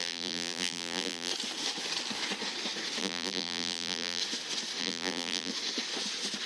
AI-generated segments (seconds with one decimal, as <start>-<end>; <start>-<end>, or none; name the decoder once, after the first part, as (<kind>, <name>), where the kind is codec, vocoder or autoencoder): 0.0-1.3 (vocoder, BigVGAN v2); 3.0-4.2; 4.8-5.5